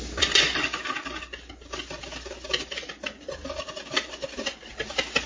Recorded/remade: recorded